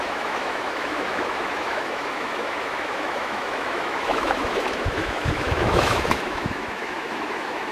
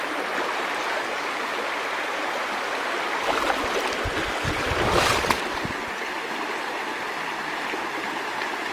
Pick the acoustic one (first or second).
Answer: second